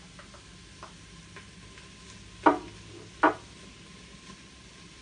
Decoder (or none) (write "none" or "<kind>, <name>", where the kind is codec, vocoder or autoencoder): none